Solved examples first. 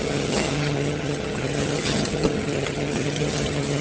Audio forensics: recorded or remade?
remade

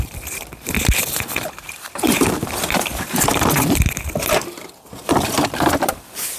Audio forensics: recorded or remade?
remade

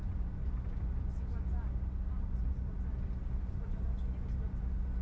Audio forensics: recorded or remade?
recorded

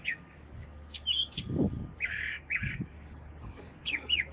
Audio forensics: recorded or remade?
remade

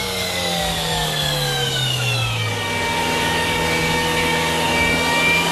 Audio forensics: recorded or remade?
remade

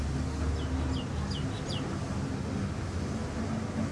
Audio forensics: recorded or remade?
recorded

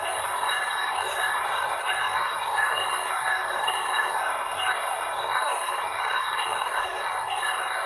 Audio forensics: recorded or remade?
remade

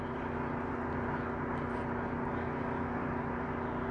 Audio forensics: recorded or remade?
recorded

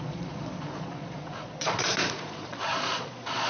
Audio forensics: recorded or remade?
remade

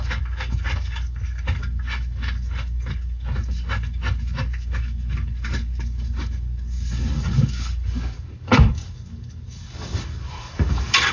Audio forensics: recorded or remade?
remade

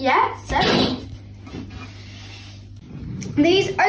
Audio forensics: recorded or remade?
recorded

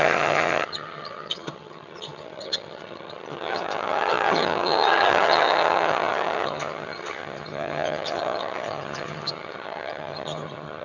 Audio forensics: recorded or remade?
remade